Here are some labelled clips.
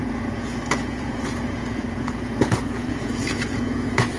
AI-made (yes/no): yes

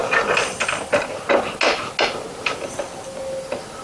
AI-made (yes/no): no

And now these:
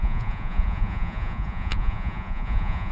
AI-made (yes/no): yes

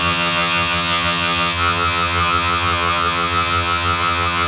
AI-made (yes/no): yes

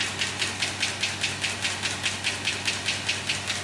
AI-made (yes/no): no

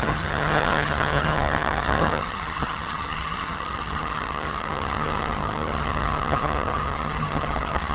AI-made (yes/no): yes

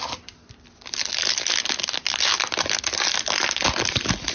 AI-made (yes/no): no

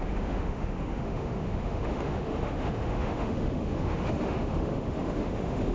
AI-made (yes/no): yes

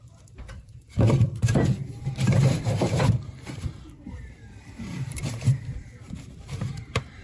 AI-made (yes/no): yes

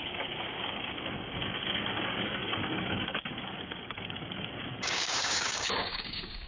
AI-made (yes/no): yes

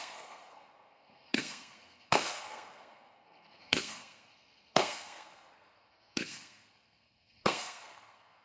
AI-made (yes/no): yes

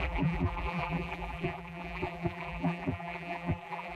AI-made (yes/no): yes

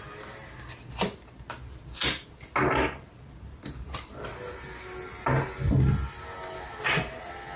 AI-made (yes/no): no